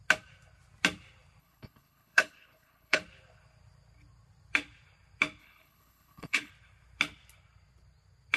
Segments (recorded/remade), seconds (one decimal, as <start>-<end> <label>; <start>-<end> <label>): 0.0-1.4 recorded; 1.4-3.0 remade; 3.0-5.4 recorded; 5.4-6.5 remade; 6.5-8.4 recorded